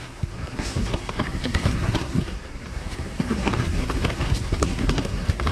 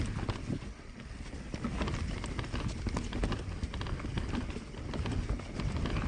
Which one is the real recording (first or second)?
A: second